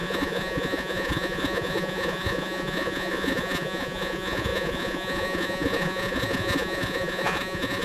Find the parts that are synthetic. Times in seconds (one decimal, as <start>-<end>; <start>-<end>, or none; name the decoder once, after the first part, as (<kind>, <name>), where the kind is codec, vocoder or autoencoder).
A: 0.0-7.8 (vocoder, Vocos)